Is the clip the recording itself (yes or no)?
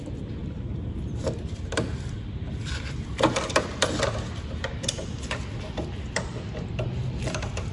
no